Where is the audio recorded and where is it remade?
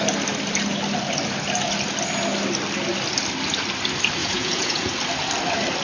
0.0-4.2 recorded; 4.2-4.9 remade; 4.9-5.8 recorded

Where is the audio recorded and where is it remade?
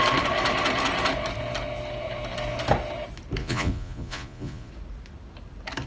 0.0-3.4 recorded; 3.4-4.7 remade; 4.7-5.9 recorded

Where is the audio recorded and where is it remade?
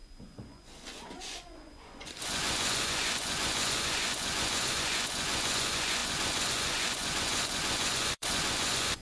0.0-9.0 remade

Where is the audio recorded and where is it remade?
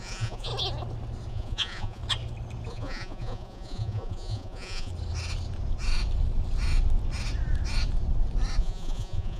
0.0-0.5 remade; 0.5-1.3 recorded; 1.3-2.0 remade; 2.0-2.7 recorded; 2.7-4.9 remade; 4.9-8.6 recorded; 8.6-9.4 remade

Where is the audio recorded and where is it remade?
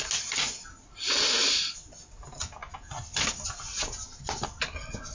0.0-5.1 recorded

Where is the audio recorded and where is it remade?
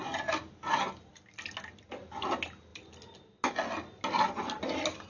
0.0-5.1 recorded